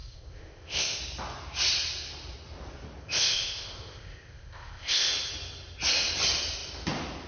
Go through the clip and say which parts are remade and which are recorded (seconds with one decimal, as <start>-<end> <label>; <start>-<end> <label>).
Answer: 0.0-1.0 remade; 1.0-3.0 recorded; 3.0-5.1 remade; 5.1-7.3 recorded